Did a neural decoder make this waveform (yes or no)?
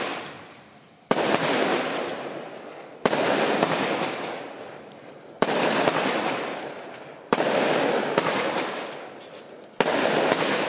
no